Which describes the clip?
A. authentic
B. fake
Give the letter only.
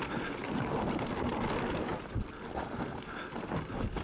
A